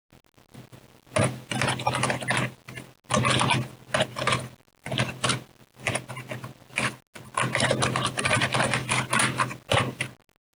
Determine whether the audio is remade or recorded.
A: recorded